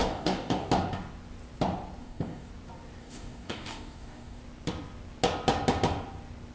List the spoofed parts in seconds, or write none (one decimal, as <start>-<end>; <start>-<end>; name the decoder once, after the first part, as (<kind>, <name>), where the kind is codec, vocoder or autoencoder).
0.0-0.7 (codec, DAC); 2.0-2.5; 3.0-4.4